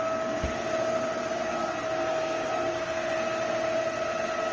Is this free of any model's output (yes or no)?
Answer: yes